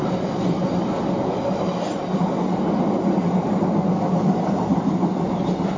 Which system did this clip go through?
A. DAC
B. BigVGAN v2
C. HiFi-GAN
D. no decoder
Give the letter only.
D